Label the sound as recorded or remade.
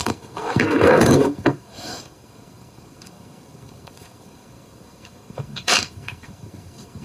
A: remade